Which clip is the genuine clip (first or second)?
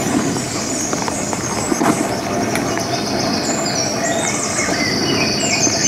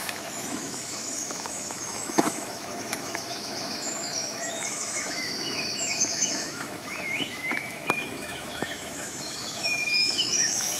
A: first